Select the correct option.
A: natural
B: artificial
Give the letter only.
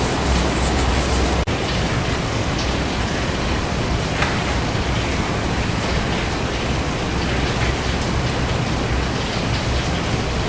A